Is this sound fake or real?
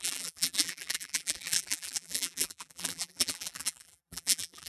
fake